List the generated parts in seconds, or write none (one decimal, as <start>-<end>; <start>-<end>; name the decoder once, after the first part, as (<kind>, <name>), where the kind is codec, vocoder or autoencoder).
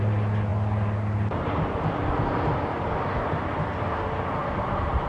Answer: none